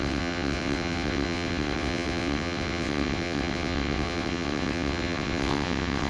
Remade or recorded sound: remade